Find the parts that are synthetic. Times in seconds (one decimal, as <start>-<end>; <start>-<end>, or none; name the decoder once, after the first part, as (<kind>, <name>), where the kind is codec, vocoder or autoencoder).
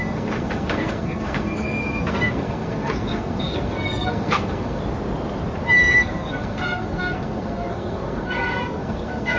0.0-4.8 (codec, SNAC); 5.8-9.4